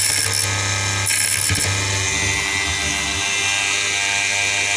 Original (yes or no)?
yes